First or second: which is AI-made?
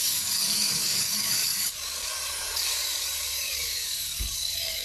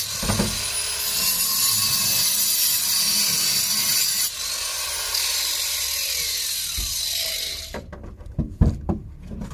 first